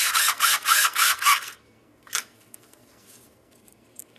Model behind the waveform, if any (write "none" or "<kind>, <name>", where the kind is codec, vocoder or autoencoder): codec, SNAC